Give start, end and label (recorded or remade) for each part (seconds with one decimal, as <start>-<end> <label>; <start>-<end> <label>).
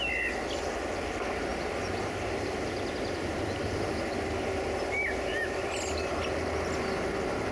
0.0-1.5 recorded; 1.5-5.8 remade; 5.8-7.5 recorded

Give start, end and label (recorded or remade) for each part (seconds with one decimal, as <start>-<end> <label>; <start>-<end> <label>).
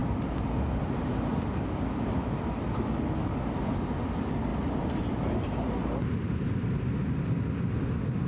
0.0-8.3 recorded